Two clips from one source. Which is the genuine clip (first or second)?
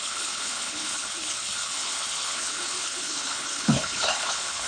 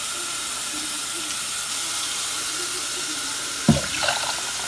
second